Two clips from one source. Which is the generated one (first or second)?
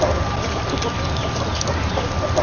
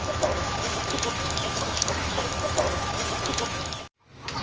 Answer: second